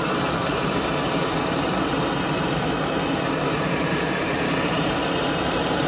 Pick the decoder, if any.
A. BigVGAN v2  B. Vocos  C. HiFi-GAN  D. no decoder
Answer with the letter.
A